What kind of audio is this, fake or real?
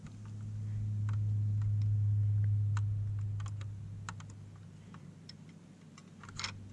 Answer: real